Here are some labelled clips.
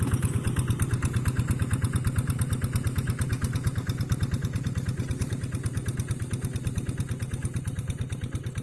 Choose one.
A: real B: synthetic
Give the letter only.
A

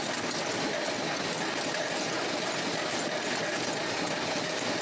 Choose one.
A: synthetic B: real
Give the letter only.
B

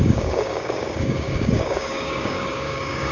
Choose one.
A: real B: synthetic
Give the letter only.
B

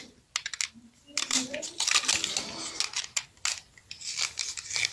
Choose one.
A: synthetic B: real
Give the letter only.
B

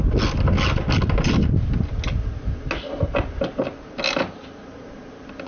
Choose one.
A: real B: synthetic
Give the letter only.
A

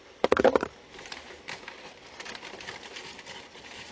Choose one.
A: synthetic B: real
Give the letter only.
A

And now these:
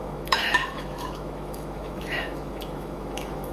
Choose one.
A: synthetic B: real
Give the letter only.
A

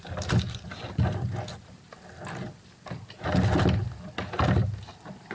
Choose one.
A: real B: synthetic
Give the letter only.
A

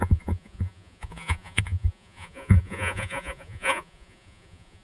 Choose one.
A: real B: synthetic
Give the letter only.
B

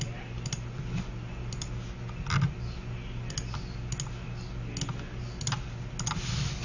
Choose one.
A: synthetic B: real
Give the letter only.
B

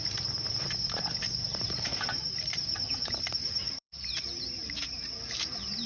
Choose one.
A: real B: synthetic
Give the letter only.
B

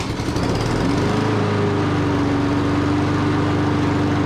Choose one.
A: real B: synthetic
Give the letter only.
A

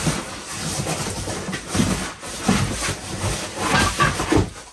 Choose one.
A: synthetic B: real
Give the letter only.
B